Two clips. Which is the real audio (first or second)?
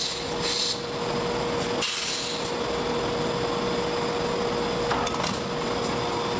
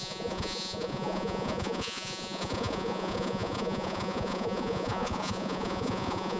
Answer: first